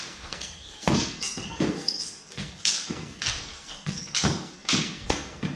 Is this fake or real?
fake